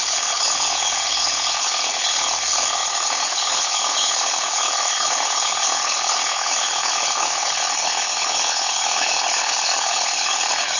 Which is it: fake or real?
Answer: fake